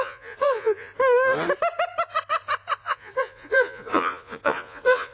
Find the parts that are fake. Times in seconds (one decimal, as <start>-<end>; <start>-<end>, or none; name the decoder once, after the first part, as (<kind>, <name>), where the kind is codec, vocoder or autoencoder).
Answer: 0.0-0.9 (vocoder, Vocos); 2.8-5.1